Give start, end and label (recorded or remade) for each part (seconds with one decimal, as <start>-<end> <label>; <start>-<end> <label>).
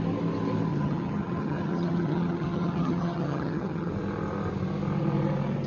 0.0-0.7 recorded; 0.7-3.9 remade; 3.9-5.7 recorded